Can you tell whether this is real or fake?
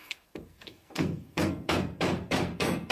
fake